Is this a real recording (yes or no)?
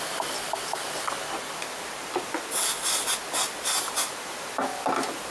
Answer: yes